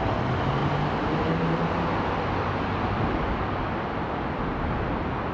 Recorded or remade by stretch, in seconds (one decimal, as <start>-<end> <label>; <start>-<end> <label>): 0.0-5.3 recorded